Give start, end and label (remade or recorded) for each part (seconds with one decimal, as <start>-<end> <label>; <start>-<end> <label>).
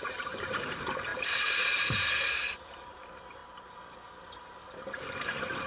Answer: 0.0-3.4 remade; 3.4-4.2 recorded; 4.2-5.7 remade